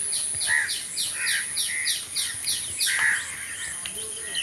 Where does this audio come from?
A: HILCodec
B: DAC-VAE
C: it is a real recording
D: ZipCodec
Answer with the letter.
C